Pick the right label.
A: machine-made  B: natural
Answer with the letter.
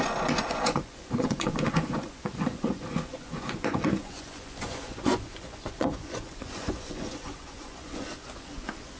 A